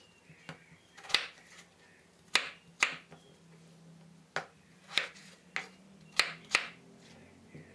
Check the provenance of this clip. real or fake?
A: real